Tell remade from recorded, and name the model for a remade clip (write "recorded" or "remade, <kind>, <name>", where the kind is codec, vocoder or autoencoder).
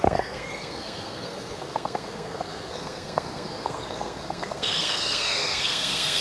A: remade, codec, SNAC